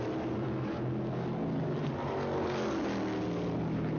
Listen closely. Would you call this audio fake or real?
real